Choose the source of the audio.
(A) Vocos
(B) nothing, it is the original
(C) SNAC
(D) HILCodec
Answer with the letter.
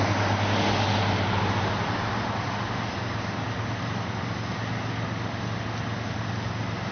B